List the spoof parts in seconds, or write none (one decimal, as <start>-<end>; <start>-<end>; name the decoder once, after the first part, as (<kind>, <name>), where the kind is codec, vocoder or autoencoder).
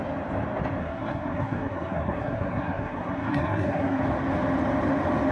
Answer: 0.8-4.0 (codec, SNAC)